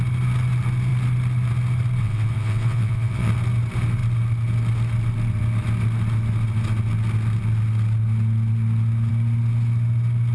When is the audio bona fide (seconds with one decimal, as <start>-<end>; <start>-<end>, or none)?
0.0-2.0; 3.3-10.3